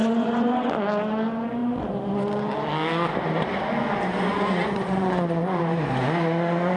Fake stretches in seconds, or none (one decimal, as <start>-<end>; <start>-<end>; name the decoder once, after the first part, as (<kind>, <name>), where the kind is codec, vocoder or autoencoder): 0.0-0.7 (vocoder, Vocos); 4.3-5.6